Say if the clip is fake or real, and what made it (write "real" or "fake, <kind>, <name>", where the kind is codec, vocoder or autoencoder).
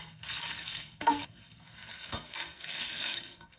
fake, codec, SNAC